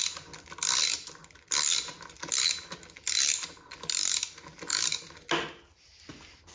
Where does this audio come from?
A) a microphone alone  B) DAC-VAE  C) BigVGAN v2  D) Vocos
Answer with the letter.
A